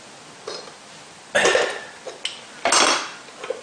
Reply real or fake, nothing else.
real